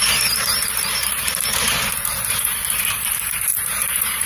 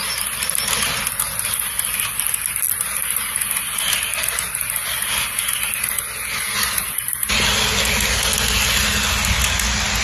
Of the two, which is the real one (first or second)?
second